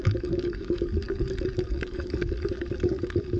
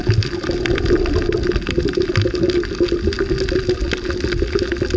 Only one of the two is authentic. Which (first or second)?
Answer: second